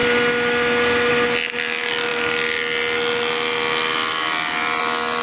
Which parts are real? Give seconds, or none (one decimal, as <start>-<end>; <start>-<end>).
0.0-5.2